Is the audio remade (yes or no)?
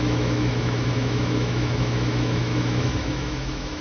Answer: yes